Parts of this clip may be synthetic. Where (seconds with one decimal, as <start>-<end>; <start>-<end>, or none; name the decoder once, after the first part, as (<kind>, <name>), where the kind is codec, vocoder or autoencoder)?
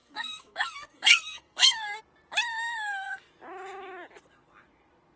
0.0-2.0 (codec, SNAC); 2.5-3.3